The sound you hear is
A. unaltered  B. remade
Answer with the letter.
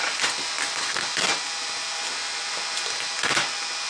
A